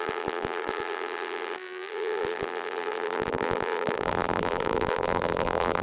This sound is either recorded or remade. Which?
remade